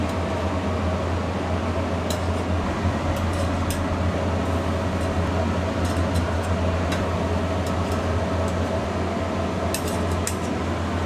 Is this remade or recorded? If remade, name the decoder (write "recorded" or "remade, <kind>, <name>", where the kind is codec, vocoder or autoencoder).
recorded